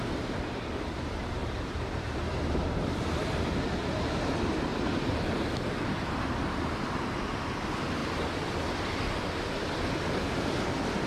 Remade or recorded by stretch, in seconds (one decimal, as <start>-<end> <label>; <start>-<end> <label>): 0.0-1.4 recorded; 1.4-2.9 remade; 2.9-11.1 recorded